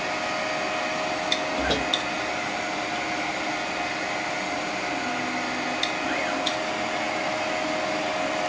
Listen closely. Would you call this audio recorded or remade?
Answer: recorded